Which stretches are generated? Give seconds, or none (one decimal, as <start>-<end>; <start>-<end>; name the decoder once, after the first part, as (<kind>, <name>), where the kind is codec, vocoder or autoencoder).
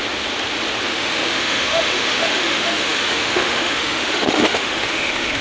0.9-5.4 (autoencoder, DAC-VAE)